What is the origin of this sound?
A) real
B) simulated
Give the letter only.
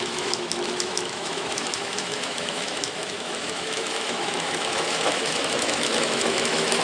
B